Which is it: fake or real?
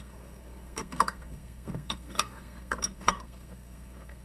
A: fake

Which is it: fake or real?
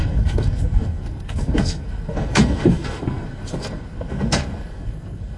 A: fake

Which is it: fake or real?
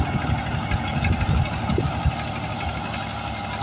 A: real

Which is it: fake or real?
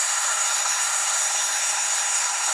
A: fake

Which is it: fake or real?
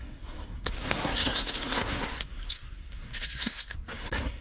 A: fake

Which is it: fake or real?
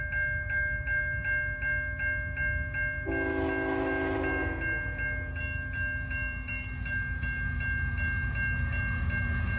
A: real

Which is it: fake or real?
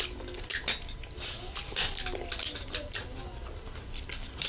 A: real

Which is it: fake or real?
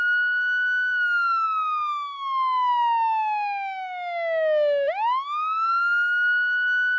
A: real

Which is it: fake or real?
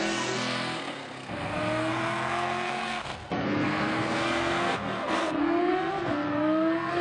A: fake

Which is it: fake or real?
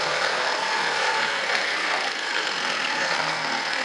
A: fake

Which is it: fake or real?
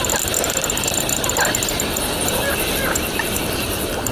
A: real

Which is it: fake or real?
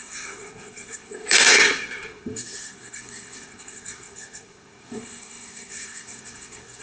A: fake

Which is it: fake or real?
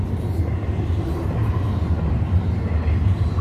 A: real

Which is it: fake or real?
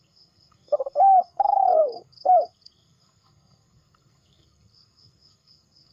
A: fake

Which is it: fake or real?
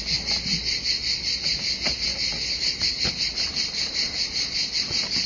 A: real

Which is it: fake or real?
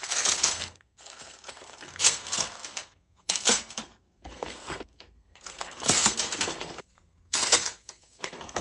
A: fake